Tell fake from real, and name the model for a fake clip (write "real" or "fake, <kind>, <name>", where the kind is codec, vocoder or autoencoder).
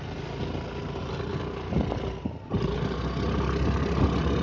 real